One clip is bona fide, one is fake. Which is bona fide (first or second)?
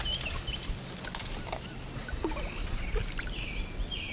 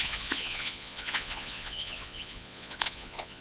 first